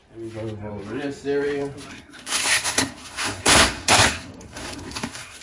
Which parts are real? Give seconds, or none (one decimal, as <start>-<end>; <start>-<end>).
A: 0.0-1.9